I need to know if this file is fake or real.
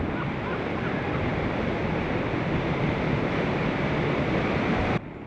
real